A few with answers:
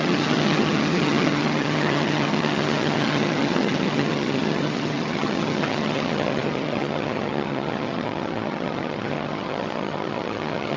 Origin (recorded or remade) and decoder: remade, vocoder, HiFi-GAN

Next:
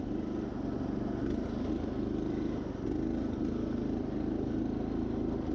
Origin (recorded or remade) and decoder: recorded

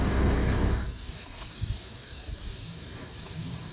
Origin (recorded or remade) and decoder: remade, codec, DAC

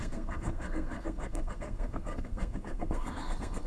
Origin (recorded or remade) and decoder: remade, codec, SNAC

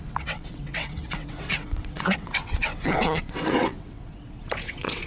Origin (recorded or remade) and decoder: remade, vocoder, WaveNeXt